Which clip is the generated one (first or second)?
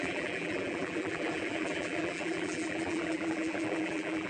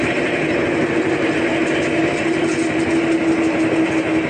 first